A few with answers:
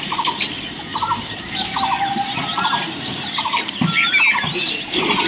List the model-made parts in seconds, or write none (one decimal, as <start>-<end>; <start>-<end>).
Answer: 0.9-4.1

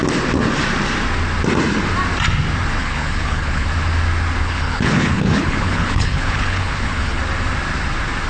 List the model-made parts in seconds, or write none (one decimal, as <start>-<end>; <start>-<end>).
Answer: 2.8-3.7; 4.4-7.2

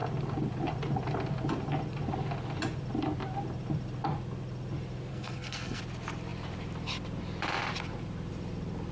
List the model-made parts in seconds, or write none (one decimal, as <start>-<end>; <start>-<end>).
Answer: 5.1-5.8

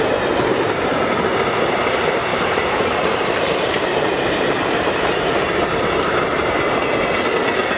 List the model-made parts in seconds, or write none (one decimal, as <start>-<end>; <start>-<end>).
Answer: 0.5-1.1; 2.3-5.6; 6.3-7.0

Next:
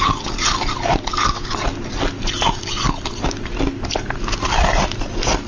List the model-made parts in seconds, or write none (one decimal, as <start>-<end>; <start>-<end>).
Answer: none

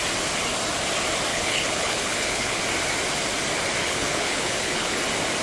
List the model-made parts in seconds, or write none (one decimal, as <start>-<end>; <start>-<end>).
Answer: 1.3-2.6; 3.8-5.0

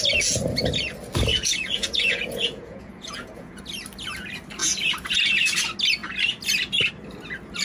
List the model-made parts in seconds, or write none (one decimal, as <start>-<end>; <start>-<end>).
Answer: 1.3-3.6; 4.6-5.2

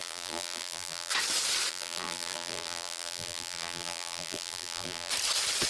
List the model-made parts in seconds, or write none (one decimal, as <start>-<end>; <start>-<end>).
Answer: 0.0-1.1; 1.7-5.1